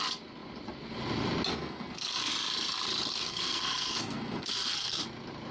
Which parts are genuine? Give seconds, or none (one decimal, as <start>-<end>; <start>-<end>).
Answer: 0.0-1.5; 2.3-3.1; 5.0-5.5

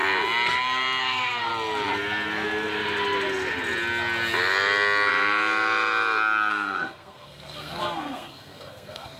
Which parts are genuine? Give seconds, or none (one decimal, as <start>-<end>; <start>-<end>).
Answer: 0.0-1.0; 1.5-6.5

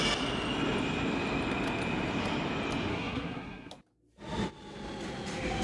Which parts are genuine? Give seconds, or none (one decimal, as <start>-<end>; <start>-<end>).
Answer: 0.0-2.9; 3.7-5.6

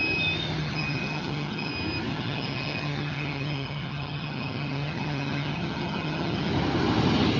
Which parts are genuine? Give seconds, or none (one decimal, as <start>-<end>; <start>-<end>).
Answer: 0.0-0.6; 1.7-2.1; 6.5-7.4

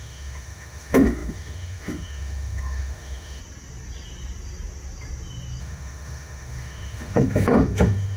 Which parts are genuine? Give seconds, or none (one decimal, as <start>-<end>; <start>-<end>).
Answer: 3.4-5.6

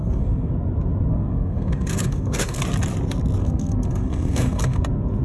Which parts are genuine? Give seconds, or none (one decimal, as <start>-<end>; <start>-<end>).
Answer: 0.5-1.1; 2.6-3.4; 4.8-5.2